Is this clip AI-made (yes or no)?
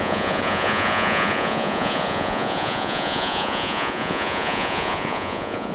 yes